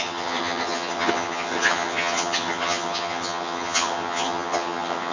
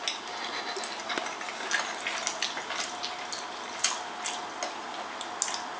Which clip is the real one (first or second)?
second